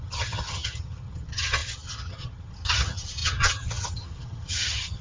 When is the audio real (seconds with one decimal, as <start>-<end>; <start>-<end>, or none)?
none